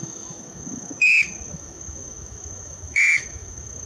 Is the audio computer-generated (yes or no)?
yes